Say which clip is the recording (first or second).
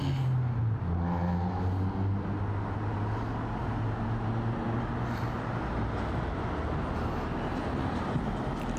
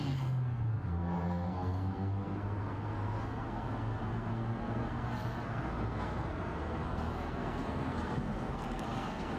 first